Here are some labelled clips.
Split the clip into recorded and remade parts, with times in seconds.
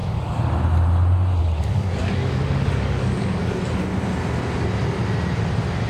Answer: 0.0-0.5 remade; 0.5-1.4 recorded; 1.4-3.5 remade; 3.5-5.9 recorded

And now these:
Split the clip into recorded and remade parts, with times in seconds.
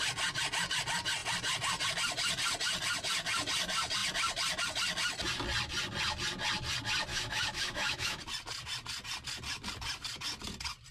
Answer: 0.0-7.1 recorded; 7.1-8.2 remade; 8.2-10.9 recorded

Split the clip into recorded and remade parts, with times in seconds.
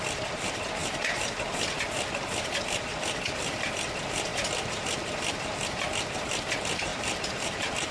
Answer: 0.0-6.9 recorded; 6.9-7.9 remade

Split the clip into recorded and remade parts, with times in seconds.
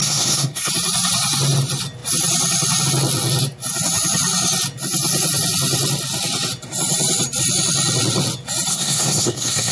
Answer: 0.0-0.7 remade; 0.7-8.7 recorded; 8.7-9.7 remade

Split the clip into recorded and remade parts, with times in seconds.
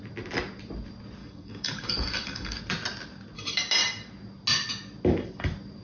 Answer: 0.0-1.2 recorded; 1.2-2.6 remade; 2.6-5.8 recorded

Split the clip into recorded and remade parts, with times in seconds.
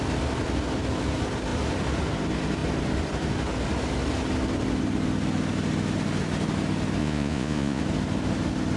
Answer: 0.0-7.0 recorded; 7.0-7.8 remade; 7.8-8.8 recorded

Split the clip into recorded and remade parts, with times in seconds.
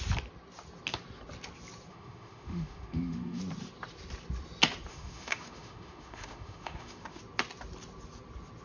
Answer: 0.0-1.9 recorded; 1.9-3.4 remade; 3.4-4.9 recorded; 4.9-7.2 remade; 7.2-8.6 recorded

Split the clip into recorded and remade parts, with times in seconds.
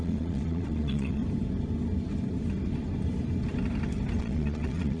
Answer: 0.0-1.2 remade; 1.2-4.2 recorded; 4.2-5.0 remade